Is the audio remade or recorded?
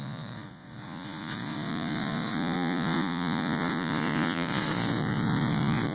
remade